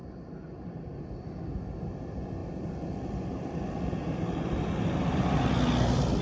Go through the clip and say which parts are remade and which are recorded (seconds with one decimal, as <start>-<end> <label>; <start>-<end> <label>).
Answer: 0.0-6.2 recorded

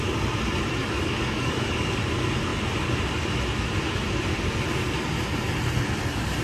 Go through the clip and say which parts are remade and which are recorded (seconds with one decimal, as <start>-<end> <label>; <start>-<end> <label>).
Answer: 0.0-0.8 recorded; 0.8-2.0 remade; 2.0-6.4 recorded

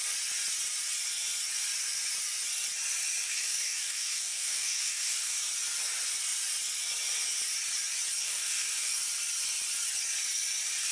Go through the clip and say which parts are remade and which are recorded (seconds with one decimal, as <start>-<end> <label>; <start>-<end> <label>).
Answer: 0.0-3.2 recorded; 3.2-5.4 remade; 5.4-8.2 recorded; 8.2-8.9 remade; 8.9-10.9 recorded

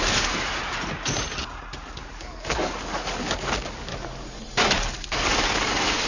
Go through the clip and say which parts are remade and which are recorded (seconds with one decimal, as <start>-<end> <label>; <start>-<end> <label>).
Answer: 0.0-0.6 remade; 0.6-2.0 recorded; 2.0-3.9 remade; 3.9-4.9 recorded; 4.9-6.1 remade

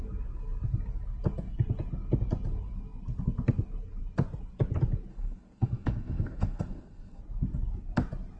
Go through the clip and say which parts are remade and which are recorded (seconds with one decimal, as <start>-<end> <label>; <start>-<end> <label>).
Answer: 0.0-5.1 recorded; 5.1-7.2 remade; 7.2-8.4 recorded

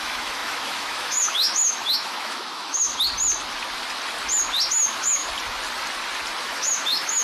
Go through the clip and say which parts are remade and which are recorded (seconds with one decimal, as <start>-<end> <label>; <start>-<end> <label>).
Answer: 0.0-2.9 remade; 2.9-4.7 recorded; 4.7-5.2 remade; 5.2-6.4 recorded; 6.4-7.2 remade

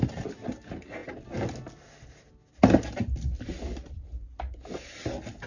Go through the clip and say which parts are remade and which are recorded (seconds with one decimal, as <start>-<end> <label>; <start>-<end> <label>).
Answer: 0.0-5.5 recorded